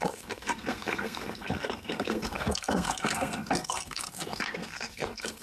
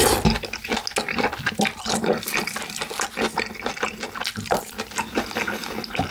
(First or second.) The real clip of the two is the second